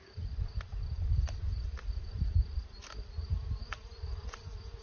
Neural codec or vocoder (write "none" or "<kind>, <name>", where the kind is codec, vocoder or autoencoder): vocoder, BigVGAN v2